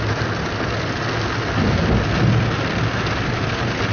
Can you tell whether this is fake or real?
real